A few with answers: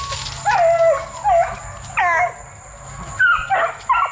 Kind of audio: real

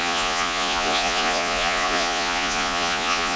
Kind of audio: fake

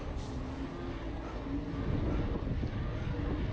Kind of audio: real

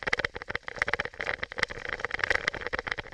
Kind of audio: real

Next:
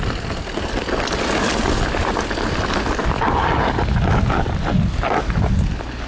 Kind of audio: real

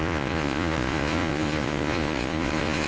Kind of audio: fake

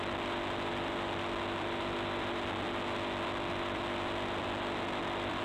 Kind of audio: real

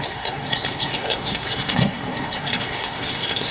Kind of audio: fake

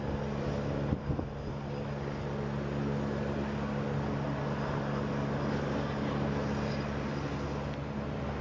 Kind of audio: real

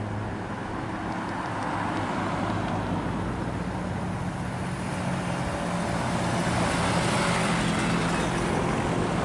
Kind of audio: real